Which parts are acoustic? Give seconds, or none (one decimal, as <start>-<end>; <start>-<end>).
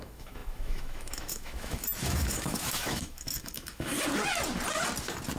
3.9-5.4